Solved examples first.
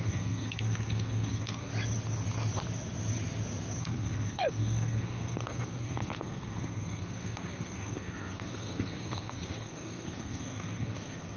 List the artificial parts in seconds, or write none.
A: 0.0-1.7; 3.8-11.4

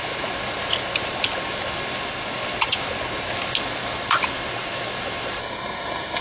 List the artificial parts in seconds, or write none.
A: 5.4-6.2

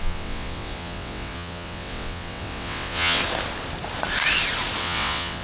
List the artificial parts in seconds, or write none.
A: 0.0-3.2; 4.8-5.4

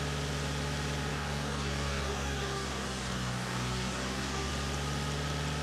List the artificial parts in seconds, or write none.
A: 1.1-4.5

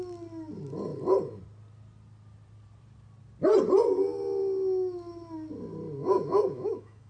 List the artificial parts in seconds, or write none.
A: 6.0-7.1

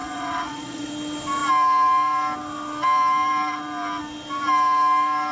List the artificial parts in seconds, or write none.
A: 0.0-0.9

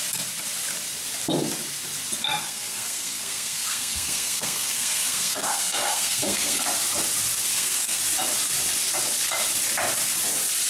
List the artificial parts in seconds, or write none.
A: 2.2-6.6; 7.5-8.0